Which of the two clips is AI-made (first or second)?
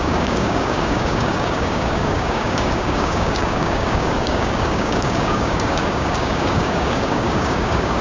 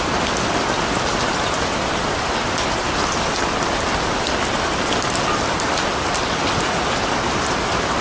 first